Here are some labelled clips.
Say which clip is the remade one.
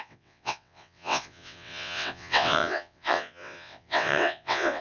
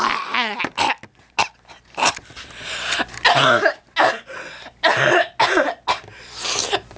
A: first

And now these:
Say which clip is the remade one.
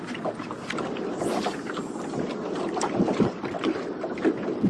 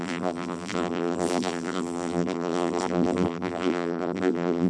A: second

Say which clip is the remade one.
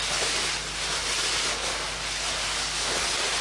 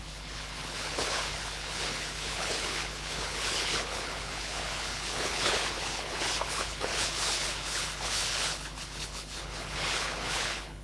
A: second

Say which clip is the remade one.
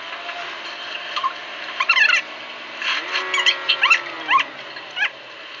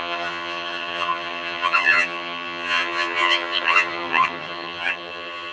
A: second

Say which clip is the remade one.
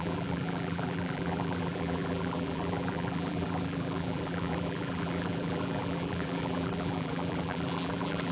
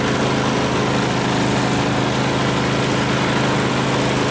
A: first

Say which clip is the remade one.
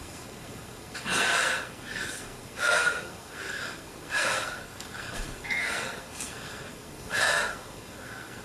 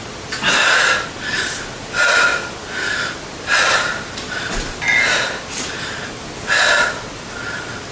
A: first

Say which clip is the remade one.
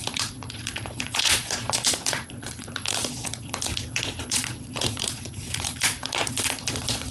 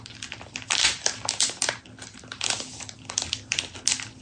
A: first